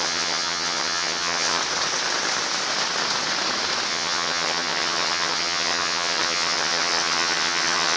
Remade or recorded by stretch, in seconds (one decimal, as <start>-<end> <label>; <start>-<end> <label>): 0.0-1.6 remade; 1.6-3.9 recorded; 3.9-8.0 remade